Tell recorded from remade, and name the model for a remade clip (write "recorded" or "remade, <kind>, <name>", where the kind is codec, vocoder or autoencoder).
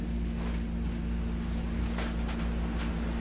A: recorded